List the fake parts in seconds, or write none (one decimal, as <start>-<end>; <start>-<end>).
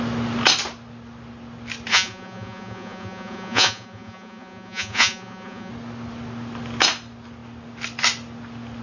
1.9-5.7